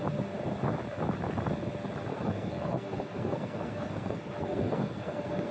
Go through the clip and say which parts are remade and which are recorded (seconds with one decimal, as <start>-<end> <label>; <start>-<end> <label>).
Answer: 0.0-2.1 recorded; 2.1-5.5 remade